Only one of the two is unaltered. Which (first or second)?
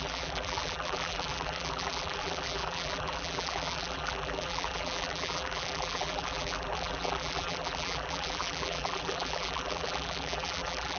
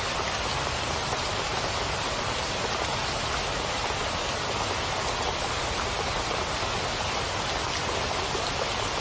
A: second